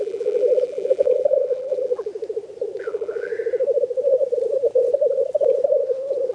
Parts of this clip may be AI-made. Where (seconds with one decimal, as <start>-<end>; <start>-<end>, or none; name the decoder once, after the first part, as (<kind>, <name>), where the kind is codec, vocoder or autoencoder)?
0.0-2.1 (vocoder, BigVGAN v2); 2.8-3.3